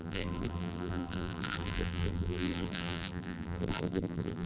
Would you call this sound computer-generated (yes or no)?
yes